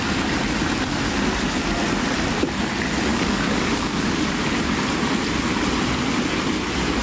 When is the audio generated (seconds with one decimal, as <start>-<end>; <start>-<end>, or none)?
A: 3.1-4.4